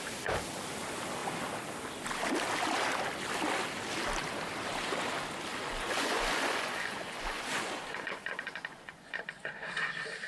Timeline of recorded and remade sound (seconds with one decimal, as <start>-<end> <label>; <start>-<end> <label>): 0.0-5.5 recorded; 5.5-9.7 remade; 9.7-10.3 recorded